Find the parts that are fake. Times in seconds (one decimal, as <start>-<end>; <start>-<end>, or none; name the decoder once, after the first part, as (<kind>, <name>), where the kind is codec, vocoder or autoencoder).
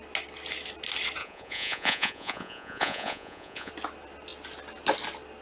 1.2-3.7 (vocoder, Vocos)